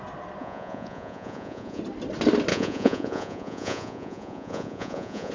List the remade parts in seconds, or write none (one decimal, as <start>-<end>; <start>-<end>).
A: 0.4-1.8; 2.5-5.3